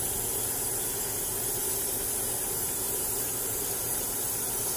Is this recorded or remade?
recorded